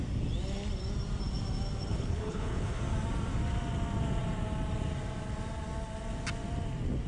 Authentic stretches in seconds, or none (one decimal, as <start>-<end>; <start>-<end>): 0.0-1.9; 2.8-7.1